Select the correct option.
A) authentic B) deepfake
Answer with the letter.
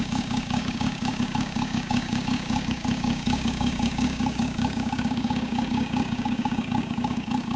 B